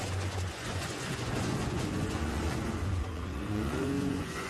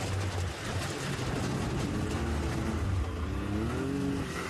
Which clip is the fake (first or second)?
first